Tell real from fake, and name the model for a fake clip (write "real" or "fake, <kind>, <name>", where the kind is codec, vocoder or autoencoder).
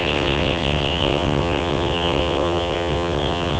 fake, vocoder, WaveNeXt